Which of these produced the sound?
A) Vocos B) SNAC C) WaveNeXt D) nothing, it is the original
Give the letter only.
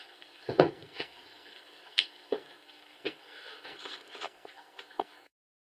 B